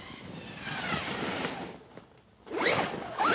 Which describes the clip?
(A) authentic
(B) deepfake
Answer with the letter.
A